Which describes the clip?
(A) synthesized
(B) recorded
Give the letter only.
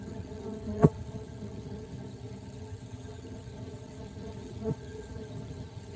A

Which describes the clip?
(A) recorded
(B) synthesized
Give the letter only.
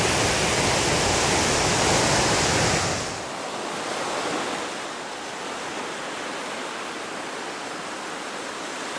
A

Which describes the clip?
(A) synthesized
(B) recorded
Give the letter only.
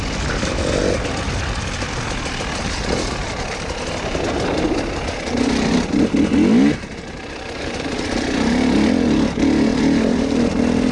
B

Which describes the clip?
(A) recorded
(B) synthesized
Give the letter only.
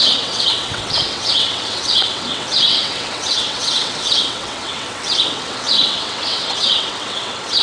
B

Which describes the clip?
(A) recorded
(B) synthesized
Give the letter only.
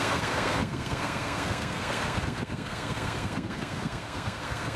B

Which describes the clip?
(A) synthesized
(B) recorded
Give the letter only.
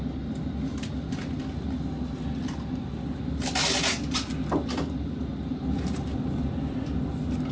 B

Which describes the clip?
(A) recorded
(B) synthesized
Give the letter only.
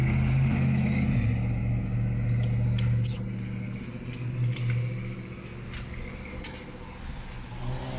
A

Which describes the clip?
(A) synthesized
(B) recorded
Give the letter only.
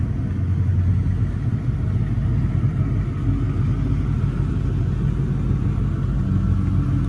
B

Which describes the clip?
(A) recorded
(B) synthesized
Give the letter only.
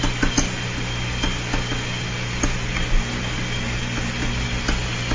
A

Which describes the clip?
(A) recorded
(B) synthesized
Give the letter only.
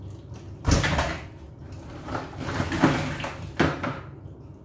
A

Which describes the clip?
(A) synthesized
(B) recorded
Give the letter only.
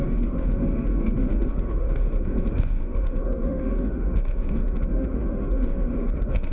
A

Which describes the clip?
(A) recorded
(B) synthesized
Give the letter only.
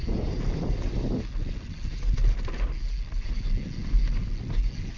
A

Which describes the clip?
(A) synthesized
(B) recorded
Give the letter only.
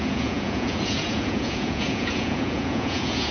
A